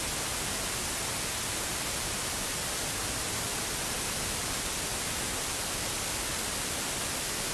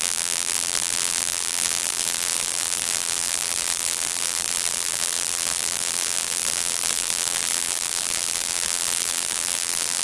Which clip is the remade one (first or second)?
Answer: second